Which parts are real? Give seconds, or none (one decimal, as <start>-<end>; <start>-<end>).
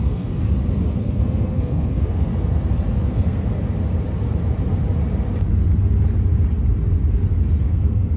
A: 0.4-0.9; 2.3-3.0; 3.5-7.6